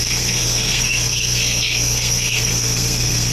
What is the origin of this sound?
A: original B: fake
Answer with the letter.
B